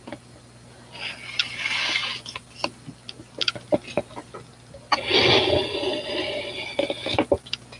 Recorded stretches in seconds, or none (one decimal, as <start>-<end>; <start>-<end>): 0.0-7.8